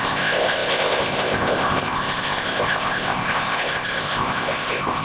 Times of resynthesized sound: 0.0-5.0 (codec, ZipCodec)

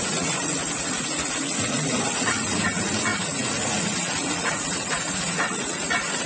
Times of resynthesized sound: 0.0-6.3 (vocoder, Vocos)

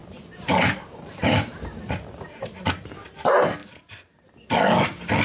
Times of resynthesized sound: 0.0-2.7 (vocoder, BigVGAN v2)

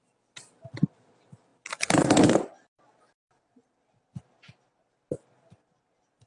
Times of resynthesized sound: none

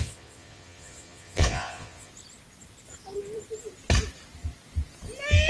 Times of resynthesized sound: 0.0-2.1 (vocoder, Vocos)

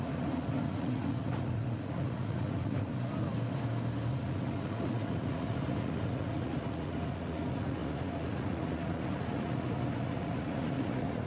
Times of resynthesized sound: 0.0-3.3 (vocoder, Vocos); 4.1-11.3